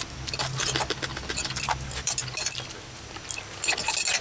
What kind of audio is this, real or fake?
real